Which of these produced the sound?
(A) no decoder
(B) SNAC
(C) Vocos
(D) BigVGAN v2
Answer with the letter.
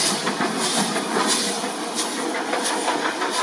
A